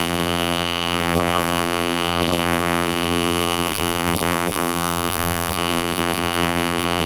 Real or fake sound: fake